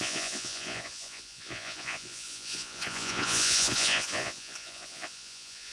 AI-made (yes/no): yes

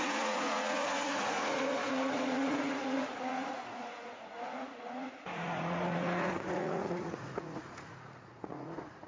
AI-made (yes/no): yes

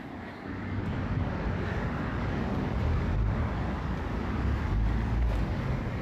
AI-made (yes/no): yes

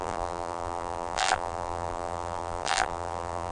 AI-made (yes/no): yes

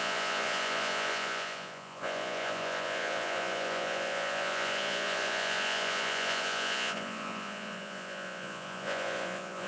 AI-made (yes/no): yes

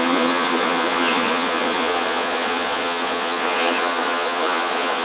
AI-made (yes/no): yes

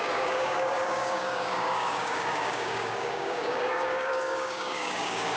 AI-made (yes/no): yes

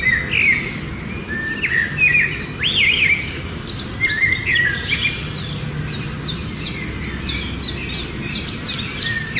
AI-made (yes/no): no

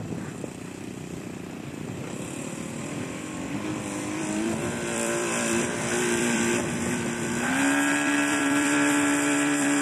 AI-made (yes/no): yes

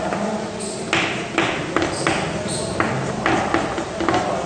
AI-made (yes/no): no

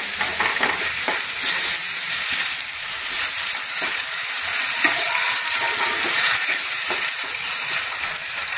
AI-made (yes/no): yes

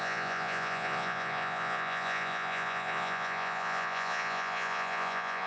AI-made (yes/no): yes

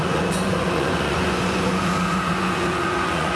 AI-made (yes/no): yes